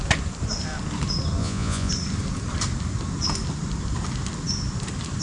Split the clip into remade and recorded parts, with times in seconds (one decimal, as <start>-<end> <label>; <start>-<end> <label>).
0.0-1.4 recorded; 1.4-1.9 remade; 1.9-5.2 recorded